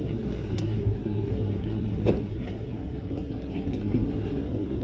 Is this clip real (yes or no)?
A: no